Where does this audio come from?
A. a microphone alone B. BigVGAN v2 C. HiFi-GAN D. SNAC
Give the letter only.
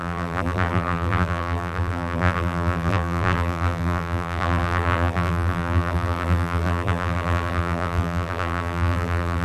B